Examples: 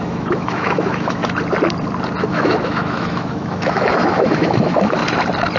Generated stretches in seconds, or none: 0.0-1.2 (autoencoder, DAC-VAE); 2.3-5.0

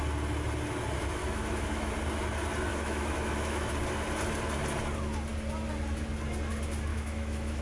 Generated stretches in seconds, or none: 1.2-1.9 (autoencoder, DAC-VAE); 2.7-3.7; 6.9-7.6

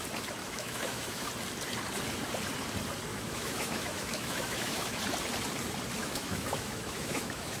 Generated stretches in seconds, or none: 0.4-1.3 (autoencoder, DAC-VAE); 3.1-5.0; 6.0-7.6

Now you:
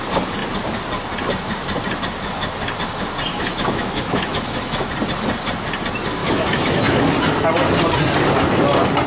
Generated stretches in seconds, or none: 3.3-4.9 (autoencoder, DAC-VAE); 6.2-7.1

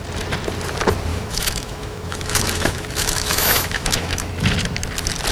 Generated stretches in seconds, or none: 1.1-4.3 (autoencoder, DAC-VAE)